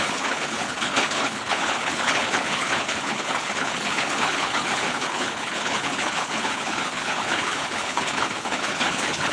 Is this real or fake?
fake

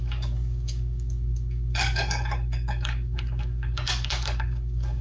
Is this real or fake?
fake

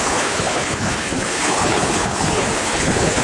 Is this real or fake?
fake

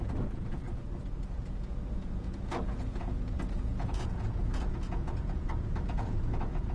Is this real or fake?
fake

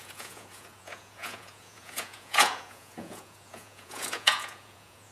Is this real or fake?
fake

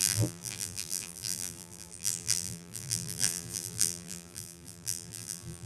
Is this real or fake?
fake